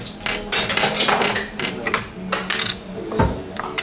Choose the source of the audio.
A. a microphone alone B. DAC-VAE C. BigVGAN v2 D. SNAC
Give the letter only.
A